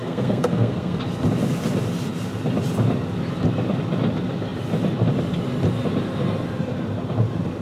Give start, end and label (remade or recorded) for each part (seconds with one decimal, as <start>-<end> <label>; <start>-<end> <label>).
0.0-1.0 remade; 1.0-7.6 recorded